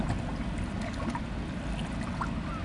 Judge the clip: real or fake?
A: real